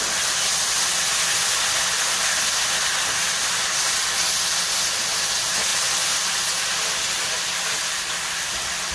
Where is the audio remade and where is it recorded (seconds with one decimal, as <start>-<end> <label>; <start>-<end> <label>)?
0.0-8.9 recorded